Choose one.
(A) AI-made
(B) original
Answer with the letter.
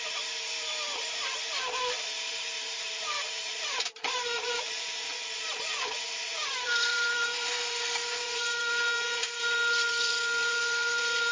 A